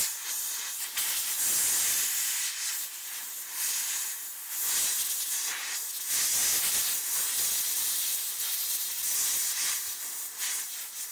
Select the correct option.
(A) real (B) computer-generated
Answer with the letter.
A